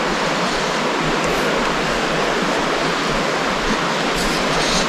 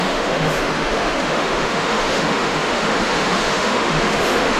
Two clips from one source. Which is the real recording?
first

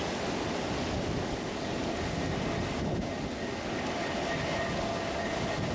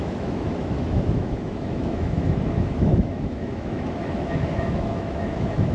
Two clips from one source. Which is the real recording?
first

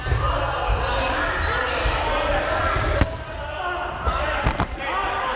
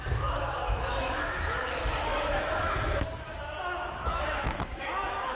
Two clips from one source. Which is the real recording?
first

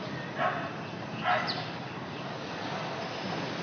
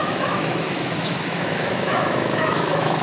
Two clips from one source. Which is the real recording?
first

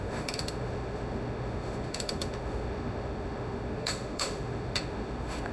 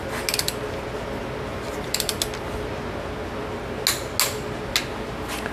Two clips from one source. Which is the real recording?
second